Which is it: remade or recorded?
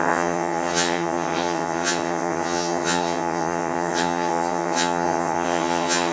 remade